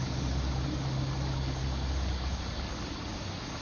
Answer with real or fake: real